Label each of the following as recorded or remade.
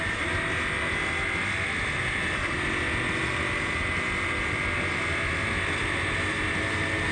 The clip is recorded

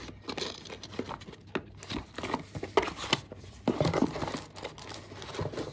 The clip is recorded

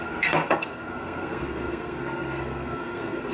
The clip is remade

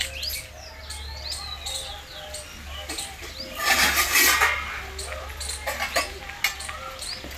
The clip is recorded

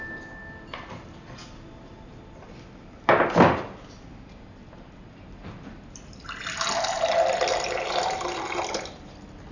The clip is recorded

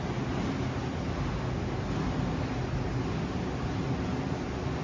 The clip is recorded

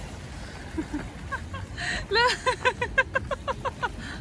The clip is recorded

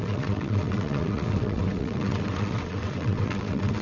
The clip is remade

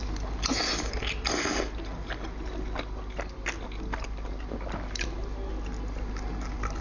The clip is recorded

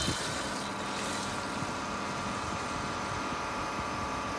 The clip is recorded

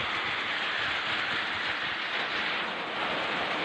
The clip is recorded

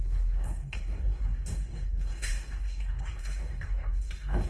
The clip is remade